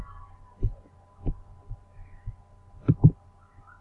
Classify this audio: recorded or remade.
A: recorded